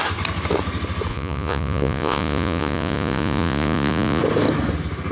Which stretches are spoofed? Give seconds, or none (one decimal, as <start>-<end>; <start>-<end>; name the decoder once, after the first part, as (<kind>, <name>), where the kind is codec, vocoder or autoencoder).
1.1-4.2 (vocoder, Vocos)